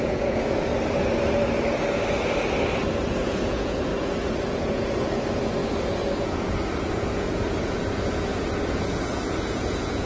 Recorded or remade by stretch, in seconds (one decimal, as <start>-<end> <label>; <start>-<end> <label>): 0.0-0.7 remade; 0.7-3.1 recorded; 3.1-3.9 remade; 3.9-4.5 recorded; 4.5-5.6 remade; 5.6-6.2 recorded; 6.2-10.1 remade